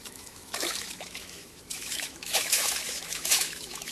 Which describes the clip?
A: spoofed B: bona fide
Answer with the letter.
A